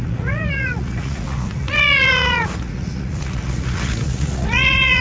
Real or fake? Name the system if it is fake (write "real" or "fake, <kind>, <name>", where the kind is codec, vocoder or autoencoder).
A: fake, vocoder, Vocos